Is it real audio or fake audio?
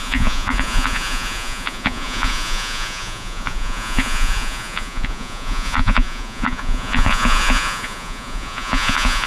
fake